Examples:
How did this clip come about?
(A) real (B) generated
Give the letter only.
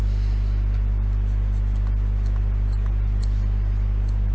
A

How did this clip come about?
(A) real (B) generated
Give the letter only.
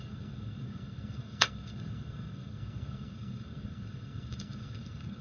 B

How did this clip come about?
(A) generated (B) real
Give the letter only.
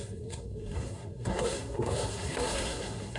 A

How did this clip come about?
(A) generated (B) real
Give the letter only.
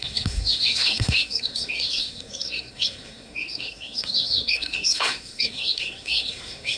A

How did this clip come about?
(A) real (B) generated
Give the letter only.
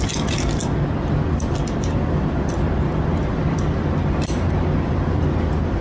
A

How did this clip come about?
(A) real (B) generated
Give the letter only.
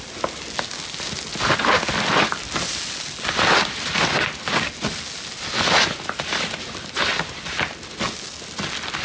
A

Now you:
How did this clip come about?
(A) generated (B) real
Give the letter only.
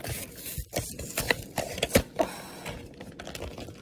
B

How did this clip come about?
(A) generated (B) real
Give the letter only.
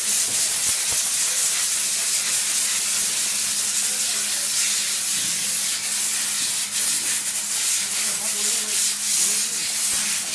B